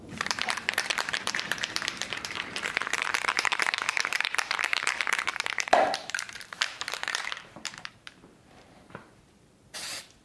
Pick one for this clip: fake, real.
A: fake